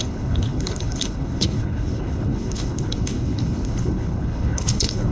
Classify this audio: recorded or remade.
remade